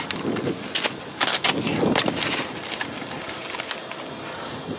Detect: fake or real real